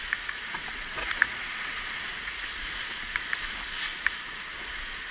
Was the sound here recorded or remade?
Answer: remade